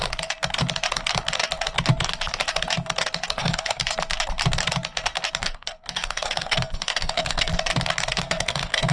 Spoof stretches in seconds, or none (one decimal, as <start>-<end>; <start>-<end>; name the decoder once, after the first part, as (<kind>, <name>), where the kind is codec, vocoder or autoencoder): 3.4-3.8 (codec, SNAC); 5.4-7.5; 8.2-8.9

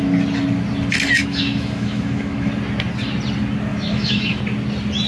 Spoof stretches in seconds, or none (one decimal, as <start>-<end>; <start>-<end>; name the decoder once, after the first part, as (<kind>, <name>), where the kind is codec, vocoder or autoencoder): 1.2-2.5 (autoencoder, DAC-VAE); 3.7-4.4

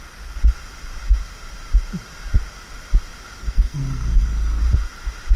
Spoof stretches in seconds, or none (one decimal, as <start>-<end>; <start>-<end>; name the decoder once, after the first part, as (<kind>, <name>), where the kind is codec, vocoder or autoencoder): 3.4-4.6 (codec, SNAC)